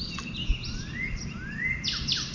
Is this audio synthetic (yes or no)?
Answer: no